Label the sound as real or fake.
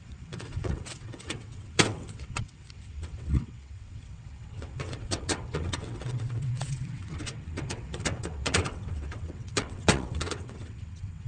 fake